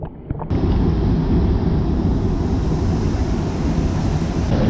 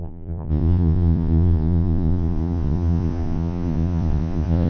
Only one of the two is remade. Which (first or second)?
second